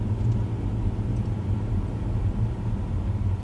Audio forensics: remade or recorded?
recorded